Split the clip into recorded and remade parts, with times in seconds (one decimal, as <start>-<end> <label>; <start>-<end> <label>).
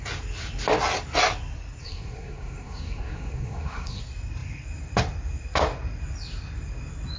0.0-1.8 recorded; 1.8-4.0 remade; 4.0-7.2 recorded